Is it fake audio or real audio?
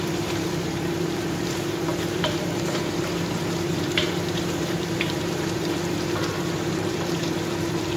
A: fake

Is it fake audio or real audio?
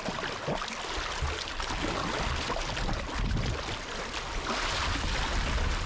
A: real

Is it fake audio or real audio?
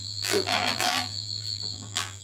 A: fake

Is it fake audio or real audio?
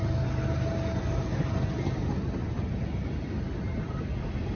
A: real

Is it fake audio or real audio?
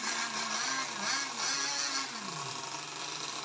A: real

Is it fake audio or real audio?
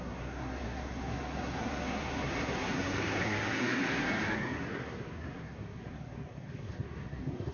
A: fake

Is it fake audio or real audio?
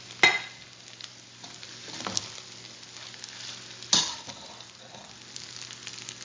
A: real